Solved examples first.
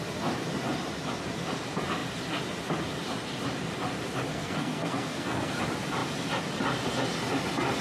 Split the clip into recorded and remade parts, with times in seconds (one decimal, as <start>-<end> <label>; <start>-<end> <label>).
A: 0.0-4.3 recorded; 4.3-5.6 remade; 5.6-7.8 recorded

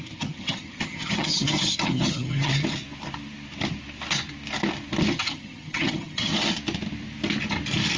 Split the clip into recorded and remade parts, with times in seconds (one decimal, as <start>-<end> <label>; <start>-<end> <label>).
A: 0.0-2.5 remade; 2.5-5.1 recorded; 5.1-6.3 remade; 6.3-8.0 recorded

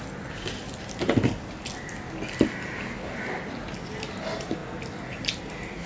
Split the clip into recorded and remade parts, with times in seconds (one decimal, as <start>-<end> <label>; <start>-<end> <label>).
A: 0.0-5.9 recorded